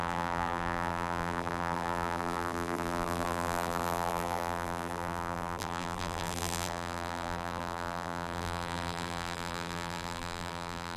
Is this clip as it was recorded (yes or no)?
no